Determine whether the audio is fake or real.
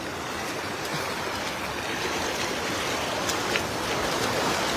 real